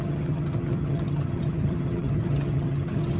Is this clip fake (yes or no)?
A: yes